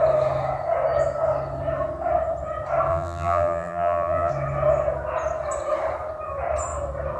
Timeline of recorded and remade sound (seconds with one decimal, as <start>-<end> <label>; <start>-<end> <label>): 0.0-2.9 recorded; 2.9-4.3 remade; 4.3-7.2 recorded